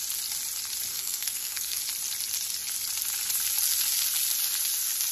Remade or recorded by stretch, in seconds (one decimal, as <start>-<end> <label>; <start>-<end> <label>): 0.0-0.9 recorded; 0.9-1.8 remade; 1.8-5.1 recorded